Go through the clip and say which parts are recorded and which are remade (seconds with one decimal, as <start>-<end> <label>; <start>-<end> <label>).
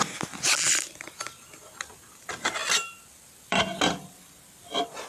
0.0-2.6 recorded; 2.6-3.6 remade; 3.6-5.1 recorded